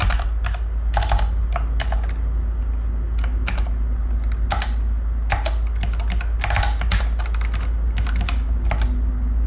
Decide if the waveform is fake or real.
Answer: real